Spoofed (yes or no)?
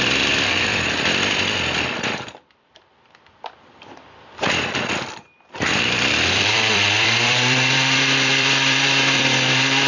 yes